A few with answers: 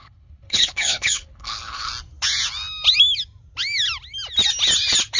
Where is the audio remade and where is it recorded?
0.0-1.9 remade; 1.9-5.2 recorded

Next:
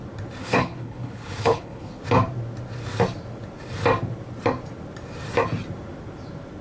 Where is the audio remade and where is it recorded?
0.0-0.4 recorded; 0.4-2.0 remade; 2.0-6.6 recorded

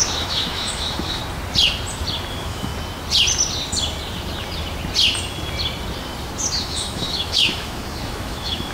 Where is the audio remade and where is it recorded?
0.0-1.2 remade; 1.2-2.3 recorded; 2.3-2.7 remade; 2.7-6.6 recorded; 6.6-8.7 remade

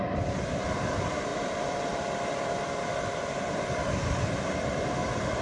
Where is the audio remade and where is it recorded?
0.0-5.4 remade

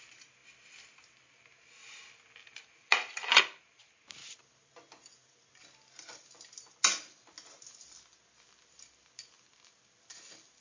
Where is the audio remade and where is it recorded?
0.0-10.6 recorded

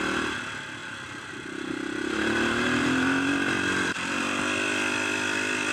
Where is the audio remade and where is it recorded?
0.0-0.8 recorded; 0.8-4.2 remade; 4.2-5.7 recorded